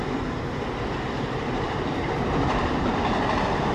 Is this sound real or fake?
fake